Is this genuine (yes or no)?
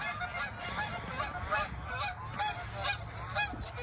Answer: yes